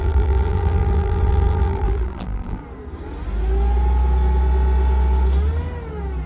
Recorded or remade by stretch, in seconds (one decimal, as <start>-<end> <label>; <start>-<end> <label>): 0.0-2.6 remade; 2.6-6.3 recorded